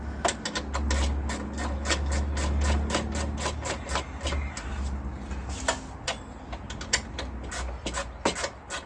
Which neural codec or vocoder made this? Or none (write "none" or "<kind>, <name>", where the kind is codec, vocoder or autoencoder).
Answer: none